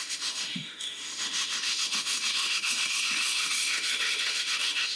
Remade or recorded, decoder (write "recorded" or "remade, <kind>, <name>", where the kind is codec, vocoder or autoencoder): remade, autoencoder, DAC-VAE